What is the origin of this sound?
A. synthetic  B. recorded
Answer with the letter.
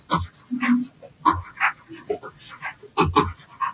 B